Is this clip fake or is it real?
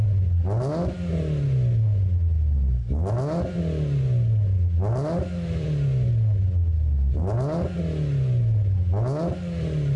real